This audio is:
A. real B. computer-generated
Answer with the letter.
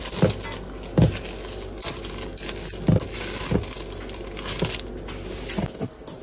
A